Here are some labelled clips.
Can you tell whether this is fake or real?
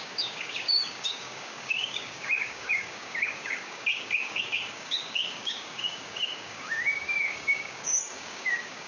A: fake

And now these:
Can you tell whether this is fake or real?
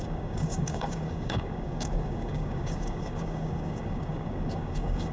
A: fake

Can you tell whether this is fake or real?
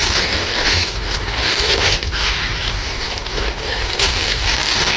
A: fake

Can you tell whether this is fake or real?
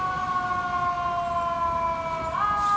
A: real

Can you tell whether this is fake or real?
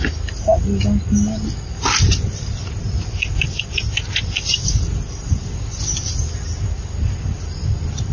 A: real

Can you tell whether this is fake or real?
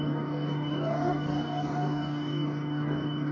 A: fake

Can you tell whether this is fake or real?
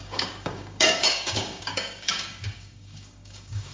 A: fake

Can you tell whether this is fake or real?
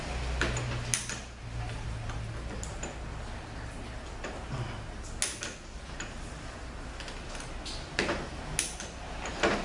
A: real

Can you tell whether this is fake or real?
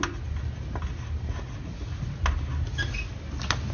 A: real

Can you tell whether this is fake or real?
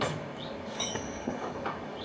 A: fake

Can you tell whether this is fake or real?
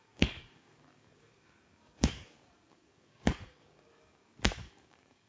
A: fake